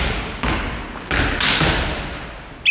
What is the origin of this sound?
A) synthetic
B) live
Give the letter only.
B